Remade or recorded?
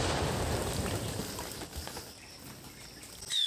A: recorded